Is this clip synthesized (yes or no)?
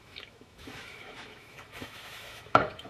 yes